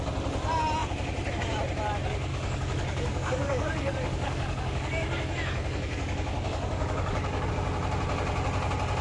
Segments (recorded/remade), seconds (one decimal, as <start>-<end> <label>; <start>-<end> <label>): 0.0-2.3 recorded; 2.3-7.5 remade; 7.5-9.0 recorded